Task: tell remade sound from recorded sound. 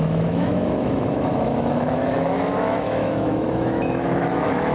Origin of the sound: remade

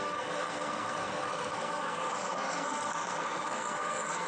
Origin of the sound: remade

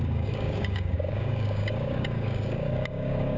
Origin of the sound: remade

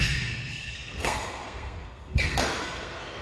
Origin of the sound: remade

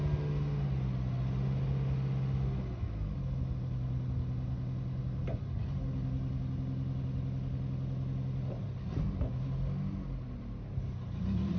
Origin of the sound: recorded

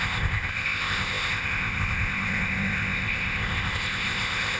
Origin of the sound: remade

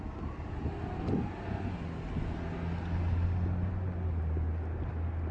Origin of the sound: recorded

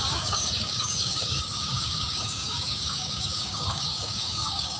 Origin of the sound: remade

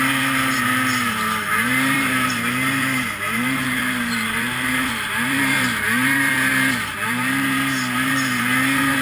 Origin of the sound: remade